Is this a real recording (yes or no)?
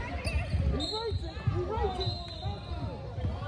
yes